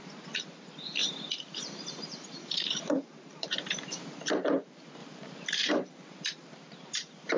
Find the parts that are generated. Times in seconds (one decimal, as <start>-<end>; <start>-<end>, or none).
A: 1.0-4.2; 5.0-5.7; 6.4-7.4